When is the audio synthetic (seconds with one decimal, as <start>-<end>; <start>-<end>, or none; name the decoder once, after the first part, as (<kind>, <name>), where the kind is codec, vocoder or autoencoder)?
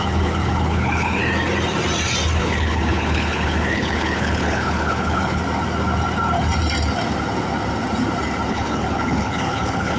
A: 0.0-1.2 (codec, HILCodec); 2.4-5.4; 8.5-10.0